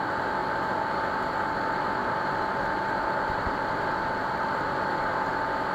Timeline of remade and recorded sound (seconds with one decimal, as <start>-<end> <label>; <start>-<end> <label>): 0.0-0.4 recorded; 0.4-1.1 remade; 1.1-2.0 recorded; 2.0-3.4 remade; 3.4-4.2 recorded; 4.2-5.1 remade; 5.1-5.7 recorded